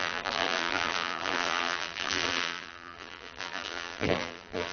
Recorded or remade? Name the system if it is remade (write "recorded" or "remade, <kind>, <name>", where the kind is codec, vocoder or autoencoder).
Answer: remade, vocoder, BigVGAN v2